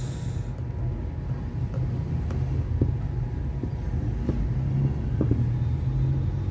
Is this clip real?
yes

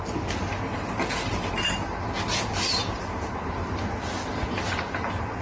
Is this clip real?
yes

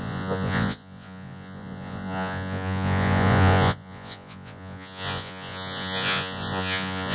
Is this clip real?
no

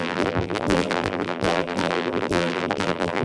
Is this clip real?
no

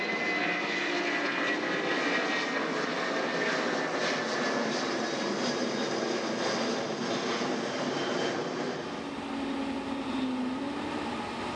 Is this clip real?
yes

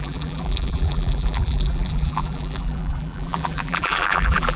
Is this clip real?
no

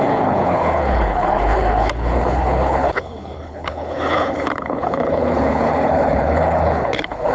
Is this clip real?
no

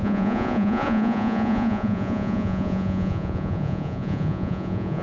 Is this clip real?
no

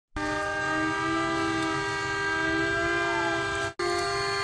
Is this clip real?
yes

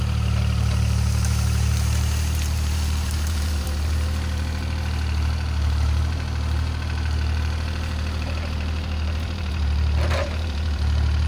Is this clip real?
no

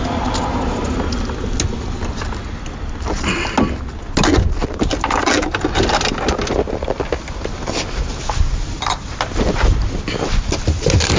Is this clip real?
yes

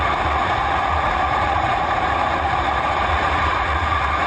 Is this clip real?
no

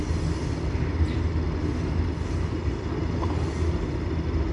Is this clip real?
yes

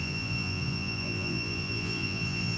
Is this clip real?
no